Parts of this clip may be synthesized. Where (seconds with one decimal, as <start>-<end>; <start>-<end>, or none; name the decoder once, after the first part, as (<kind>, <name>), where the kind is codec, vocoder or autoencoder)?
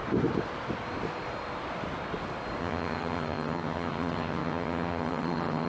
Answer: 2.6-5.7 (vocoder, HiFi-GAN)